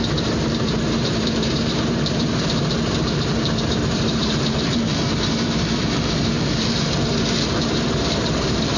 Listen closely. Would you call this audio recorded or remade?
remade